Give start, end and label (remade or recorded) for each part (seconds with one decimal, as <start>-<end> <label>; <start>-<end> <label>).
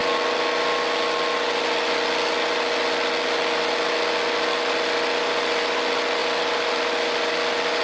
0.0-6.2 recorded; 6.2-7.3 remade; 7.3-7.8 recorded